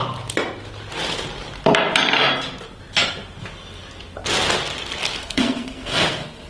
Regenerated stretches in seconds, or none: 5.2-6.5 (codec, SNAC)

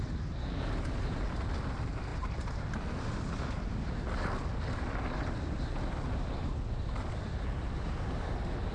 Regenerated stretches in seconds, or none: none

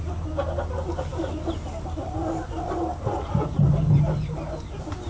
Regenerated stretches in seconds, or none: none

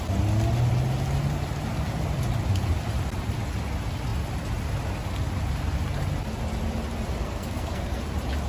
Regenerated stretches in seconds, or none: 7.2-8.0 (codec, SNAC)

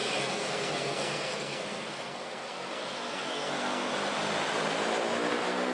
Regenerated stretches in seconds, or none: 0.0-3.9 (codec, SNAC); 5.3-5.7

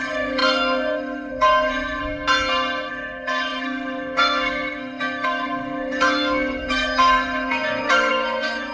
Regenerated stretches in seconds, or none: 0.0-2.0 (codec, SNAC); 2.9-8.7

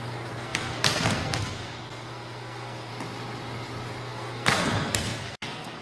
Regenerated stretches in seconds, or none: 0.0-2.9 (codec, SNAC); 4.0-5.8